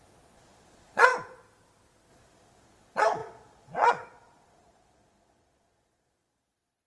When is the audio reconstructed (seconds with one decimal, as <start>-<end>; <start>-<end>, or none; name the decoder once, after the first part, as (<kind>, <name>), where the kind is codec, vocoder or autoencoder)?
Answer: 0.0-1.1 (vocoder, Vocos); 2.1-6.9